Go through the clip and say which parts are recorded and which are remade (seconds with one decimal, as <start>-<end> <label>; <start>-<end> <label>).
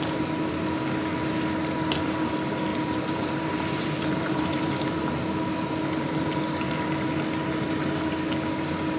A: 0.0-2.7 recorded; 2.7-5.0 remade; 5.0-9.0 recorded